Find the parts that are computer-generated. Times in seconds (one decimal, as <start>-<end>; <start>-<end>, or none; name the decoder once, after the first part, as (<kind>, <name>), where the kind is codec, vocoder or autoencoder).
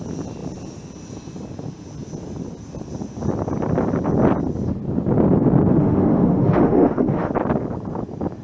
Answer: 5.8-7.3 (autoencoder, DAC-VAE)